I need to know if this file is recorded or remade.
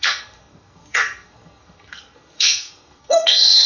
remade